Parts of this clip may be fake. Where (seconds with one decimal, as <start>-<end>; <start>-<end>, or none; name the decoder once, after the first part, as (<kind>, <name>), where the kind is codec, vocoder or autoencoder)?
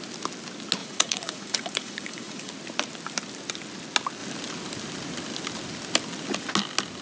0.8-2.5 (vocoder, Vocos)